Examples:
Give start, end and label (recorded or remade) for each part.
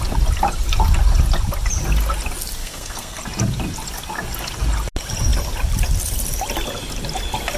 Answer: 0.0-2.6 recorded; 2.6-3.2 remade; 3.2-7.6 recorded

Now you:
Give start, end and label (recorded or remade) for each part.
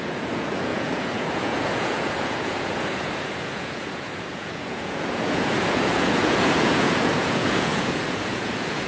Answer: 0.0-8.9 remade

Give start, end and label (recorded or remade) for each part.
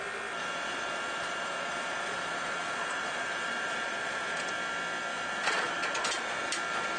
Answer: 0.0-0.4 recorded; 0.4-4.5 remade; 4.5-5.1 recorded; 5.1-6.5 remade; 6.5-7.0 recorded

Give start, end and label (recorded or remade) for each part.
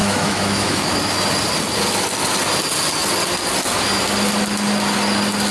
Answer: 0.0-0.9 remade; 0.9-5.5 recorded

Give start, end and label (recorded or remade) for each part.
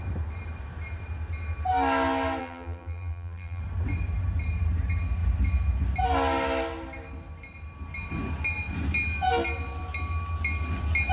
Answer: 0.0-2.4 recorded; 2.4-3.6 remade; 3.6-11.1 recorded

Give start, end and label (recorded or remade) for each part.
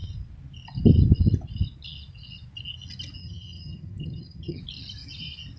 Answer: 0.0-3.2 recorded; 3.2-4.6 remade; 4.6-5.6 recorded